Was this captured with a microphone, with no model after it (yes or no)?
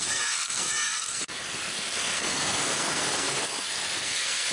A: no